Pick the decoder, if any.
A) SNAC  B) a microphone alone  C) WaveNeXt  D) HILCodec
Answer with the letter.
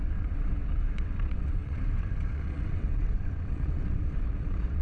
C